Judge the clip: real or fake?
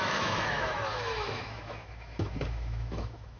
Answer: fake